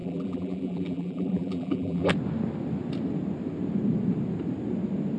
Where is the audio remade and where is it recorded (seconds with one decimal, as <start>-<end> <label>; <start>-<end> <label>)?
0.0-2.1 remade; 2.1-5.2 recorded